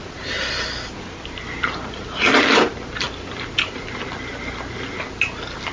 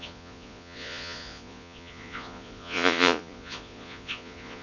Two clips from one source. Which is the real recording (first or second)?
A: first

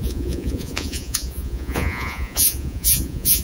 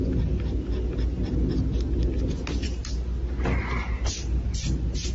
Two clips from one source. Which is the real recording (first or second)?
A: second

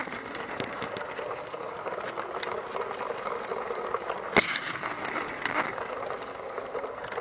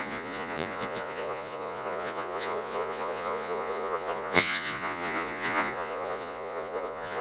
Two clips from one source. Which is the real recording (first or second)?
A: first